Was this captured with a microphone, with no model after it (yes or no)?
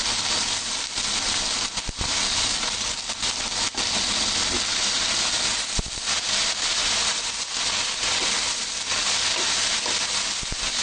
yes